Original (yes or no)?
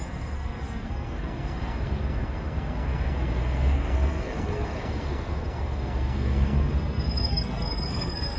no